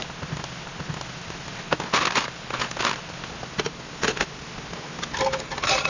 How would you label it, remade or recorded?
recorded